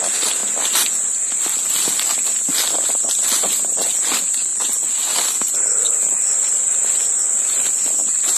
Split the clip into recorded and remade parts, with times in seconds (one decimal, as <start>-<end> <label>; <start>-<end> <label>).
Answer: 0.0-8.4 recorded